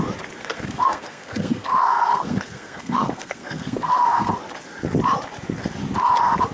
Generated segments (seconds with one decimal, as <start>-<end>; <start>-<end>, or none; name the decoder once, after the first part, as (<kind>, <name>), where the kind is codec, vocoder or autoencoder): 0.4-4.3 (codec, SNAC)